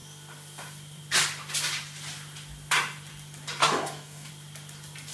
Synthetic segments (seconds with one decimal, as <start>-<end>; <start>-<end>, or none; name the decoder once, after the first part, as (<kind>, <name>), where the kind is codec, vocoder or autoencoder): 3.6-4.3 (codec, DAC)

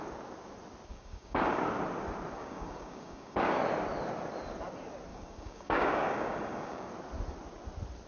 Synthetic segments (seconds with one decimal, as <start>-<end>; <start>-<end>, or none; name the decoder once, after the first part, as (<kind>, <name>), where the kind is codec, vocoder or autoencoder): 0.9-1.6 (codec, DAC); 2.4-3.6; 5.1-6.9

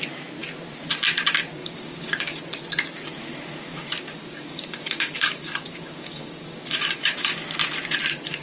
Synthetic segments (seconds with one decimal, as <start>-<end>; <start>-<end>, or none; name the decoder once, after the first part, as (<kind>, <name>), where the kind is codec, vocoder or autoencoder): 1.6-2.4 (codec, DAC); 3.2-7.4

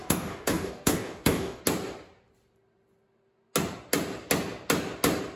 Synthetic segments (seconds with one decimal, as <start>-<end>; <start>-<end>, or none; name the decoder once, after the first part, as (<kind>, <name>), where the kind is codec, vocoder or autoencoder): 0.0-1.6 (codec, DAC)

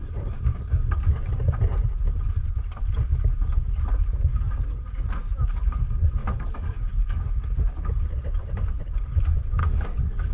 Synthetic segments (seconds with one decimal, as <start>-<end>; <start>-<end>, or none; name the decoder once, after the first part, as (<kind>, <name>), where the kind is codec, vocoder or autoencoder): 5.2-5.7 (codec, DAC); 6.2-7.3; 9.6-10.3

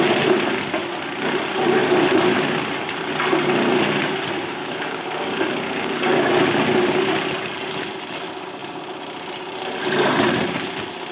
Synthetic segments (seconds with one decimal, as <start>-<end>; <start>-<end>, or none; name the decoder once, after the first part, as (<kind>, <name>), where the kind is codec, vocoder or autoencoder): 4.6-6.4 (codec, DAC)